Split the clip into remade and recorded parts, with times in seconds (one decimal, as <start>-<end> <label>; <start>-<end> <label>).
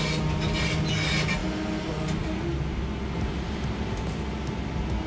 0.0-5.1 recorded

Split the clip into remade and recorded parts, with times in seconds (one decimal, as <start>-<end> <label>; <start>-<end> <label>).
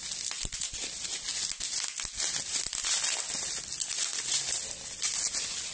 0.0-5.7 recorded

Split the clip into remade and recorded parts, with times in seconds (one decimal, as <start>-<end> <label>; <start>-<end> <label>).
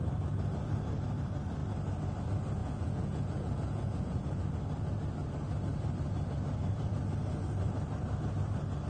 0.0-2.6 recorded; 2.6-4.4 remade; 4.4-8.9 recorded